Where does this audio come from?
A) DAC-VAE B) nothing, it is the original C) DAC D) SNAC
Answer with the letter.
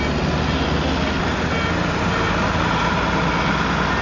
B